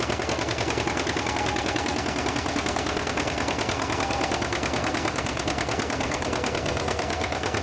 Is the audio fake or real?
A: fake